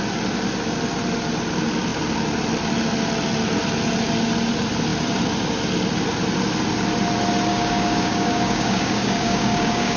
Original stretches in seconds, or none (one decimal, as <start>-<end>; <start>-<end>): 0.0-7.5